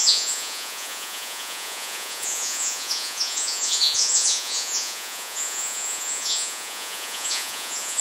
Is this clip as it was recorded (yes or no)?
no